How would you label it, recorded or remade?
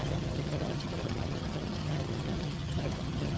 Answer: remade